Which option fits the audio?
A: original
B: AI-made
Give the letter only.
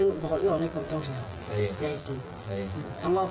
B